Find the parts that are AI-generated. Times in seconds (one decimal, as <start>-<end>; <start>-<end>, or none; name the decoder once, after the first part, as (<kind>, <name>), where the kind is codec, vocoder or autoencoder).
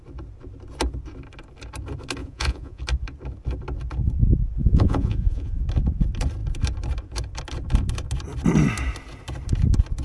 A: 2.2-2.8 (vocoder, Vocos); 4.6-5.6